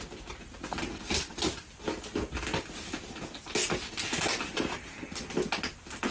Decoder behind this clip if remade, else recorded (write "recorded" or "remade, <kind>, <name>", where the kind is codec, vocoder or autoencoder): recorded